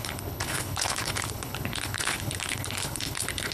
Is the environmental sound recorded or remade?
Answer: remade